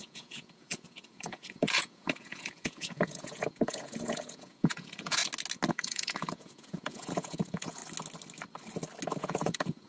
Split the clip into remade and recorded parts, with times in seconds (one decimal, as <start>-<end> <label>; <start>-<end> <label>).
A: 0.0-5.2 remade; 5.2-5.7 recorded; 5.7-7.8 remade; 7.8-9.2 recorded; 9.2-9.9 remade